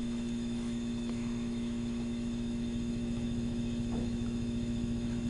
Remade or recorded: remade